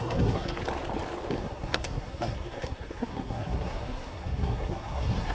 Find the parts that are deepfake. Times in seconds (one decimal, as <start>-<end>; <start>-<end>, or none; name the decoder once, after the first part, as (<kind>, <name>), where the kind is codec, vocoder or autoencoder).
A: 0.0-0.6 (codec, SNAC); 1.3-5.3